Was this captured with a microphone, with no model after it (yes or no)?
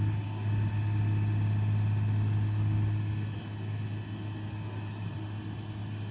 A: yes